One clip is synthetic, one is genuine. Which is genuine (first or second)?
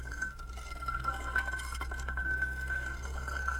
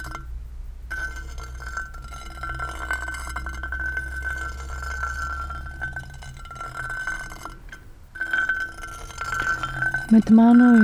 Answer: second